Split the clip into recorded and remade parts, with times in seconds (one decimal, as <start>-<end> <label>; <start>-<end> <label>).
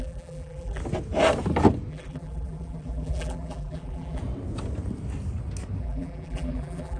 0.0-0.8 remade; 0.8-1.9 recorded; 1.9-4.2 remade; 4.2-5.8 recorded; 5.8-7.0 remade